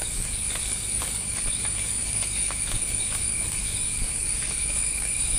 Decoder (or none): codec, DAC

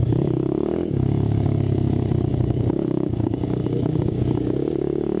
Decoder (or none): codec, DAC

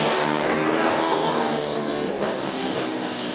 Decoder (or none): codec, DAC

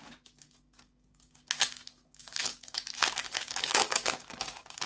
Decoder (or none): codec, DAC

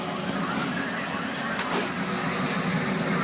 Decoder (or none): none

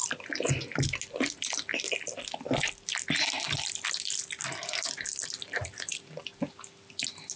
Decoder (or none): none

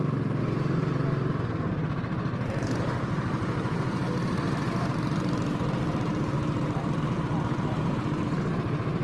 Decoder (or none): none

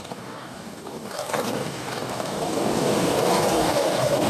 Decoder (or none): codec, DAC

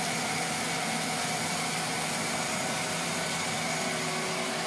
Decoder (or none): none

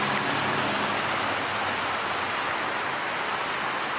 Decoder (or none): none